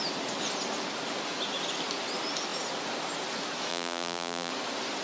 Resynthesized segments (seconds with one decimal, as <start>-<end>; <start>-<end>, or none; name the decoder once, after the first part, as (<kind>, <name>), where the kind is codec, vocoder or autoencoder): 3.7-4.5 (vocoder, BigVGAN v2)